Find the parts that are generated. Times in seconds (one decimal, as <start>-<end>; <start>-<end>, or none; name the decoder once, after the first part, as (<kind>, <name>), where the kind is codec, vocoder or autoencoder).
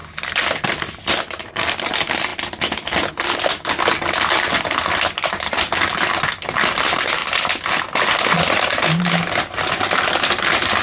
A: none